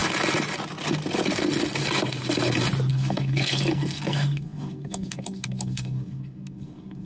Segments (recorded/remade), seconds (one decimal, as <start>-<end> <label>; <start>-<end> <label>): 0.0-2.9 recorded; 2.9-7.1 remade